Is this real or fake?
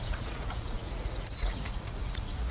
fake